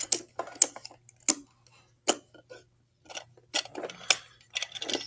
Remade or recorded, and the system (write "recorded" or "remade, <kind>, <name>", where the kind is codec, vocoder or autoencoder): recorded